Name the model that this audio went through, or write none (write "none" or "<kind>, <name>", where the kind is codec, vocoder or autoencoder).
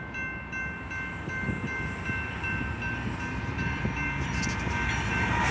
none